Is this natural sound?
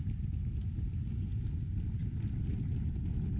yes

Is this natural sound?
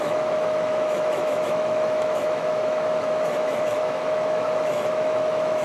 no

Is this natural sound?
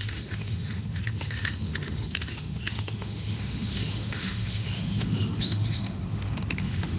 no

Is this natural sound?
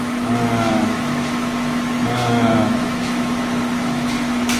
no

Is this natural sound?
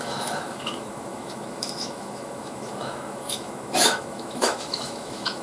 no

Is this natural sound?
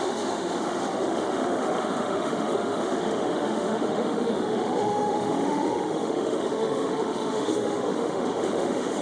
no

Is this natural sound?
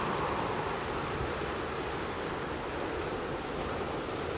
yes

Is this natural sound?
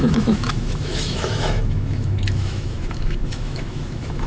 no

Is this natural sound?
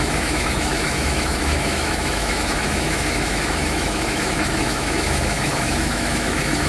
no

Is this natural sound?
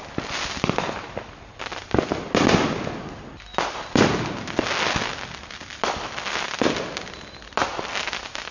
yes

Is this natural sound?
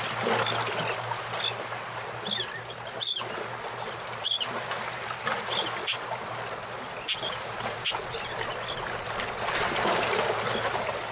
yes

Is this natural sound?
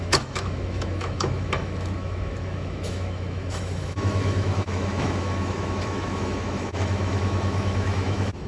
no